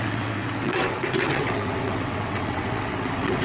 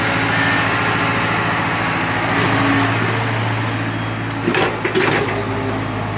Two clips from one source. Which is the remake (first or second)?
first